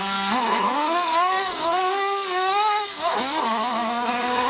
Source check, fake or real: fake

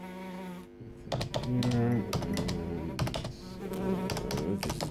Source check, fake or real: real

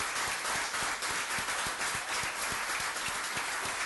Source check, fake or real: real